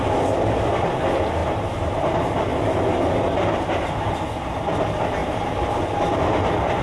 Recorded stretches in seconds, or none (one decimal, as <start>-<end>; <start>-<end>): 0.0-1.4; 2.0-2.5; 3.9-5.2; 5.8-6.8